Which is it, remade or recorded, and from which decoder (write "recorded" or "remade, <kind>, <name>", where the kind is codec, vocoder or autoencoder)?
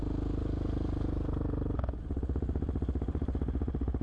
recorded